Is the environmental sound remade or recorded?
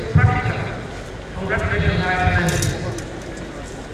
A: recorded